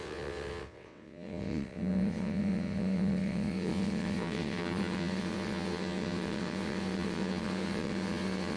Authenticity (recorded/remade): remade